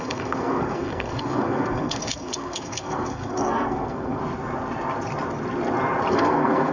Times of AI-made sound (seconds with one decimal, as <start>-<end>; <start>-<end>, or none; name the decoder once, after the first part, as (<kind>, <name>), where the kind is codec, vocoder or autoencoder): 0.0-4.2 (codec, SNAC); 6.1-6.7